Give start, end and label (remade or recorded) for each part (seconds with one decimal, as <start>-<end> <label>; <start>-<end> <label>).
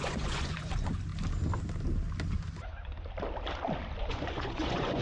0.0-1.1 remade; 1.1-4.1 recorded; 4.1-5.0 remade